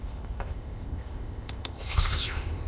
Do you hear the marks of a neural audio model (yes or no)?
yes